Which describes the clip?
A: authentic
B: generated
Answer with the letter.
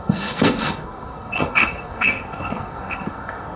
B